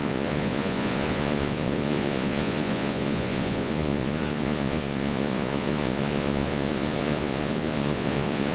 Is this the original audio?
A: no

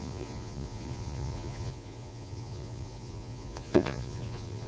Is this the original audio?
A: no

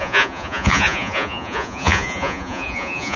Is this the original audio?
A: no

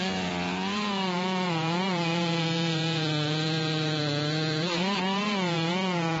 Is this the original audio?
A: no